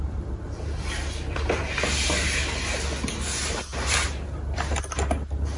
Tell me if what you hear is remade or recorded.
recorded